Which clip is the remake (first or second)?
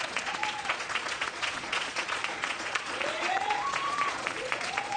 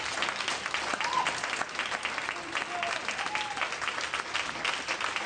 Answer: first